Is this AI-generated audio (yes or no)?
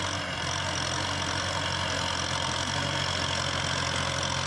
no